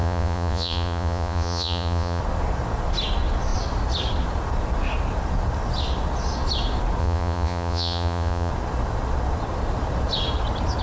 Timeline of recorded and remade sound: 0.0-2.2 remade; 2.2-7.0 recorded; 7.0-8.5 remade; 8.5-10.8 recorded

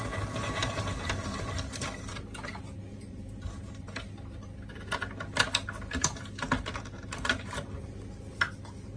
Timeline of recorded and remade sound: 0.0-9.0 recorded